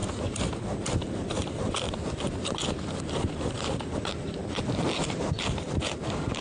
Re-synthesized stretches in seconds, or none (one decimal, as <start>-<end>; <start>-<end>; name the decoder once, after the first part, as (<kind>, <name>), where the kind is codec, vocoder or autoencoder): 0.0-4.4 (vocoder, BigVGAN v2); 5.6-6.4